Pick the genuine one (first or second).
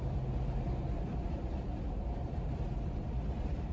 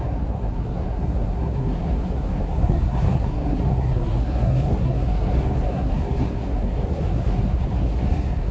first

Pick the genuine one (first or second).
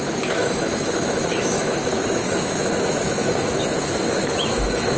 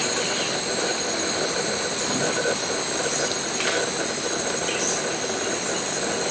second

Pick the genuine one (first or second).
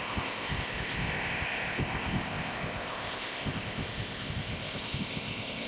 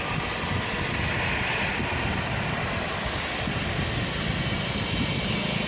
second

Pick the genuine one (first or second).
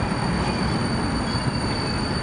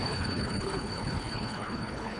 first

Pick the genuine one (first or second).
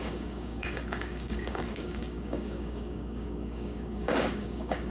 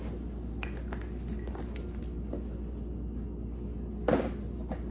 second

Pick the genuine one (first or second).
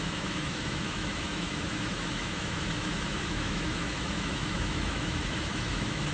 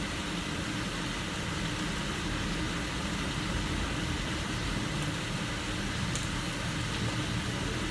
second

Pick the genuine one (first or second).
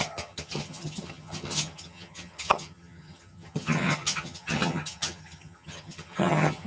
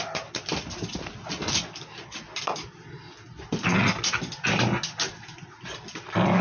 second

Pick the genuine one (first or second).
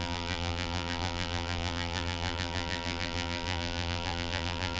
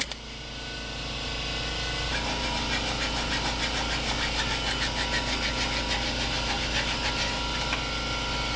second